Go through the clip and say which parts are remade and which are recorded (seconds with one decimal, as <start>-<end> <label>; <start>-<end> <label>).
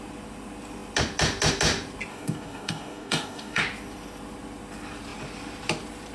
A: 0.0-2.1 recorded; 2.1-3.6 remade; 3.6-6.1 recorded